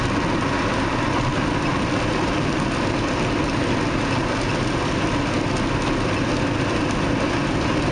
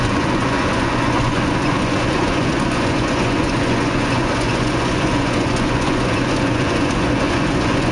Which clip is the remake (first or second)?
second